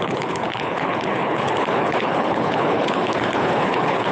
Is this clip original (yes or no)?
no